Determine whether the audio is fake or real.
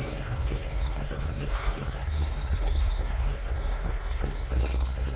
fake